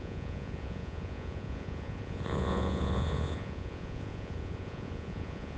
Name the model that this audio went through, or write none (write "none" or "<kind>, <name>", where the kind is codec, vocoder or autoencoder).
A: vocoder, Vocos